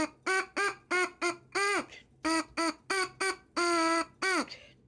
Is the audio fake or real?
real